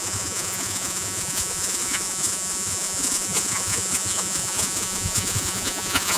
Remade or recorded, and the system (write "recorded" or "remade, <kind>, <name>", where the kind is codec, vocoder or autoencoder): remade, vocoder, Vocos